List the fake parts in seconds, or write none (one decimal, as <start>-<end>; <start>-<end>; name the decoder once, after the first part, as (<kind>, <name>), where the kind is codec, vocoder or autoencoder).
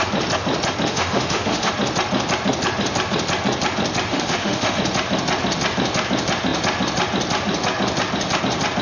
0.9-1.7 (autoencoder, DAC-VAE); 4.1-4.8